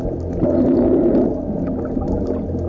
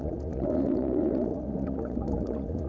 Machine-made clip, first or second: second